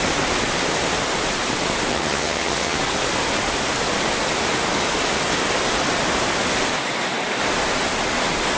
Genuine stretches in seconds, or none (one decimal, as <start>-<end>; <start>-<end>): 0.0-1.9; 2.8-8.6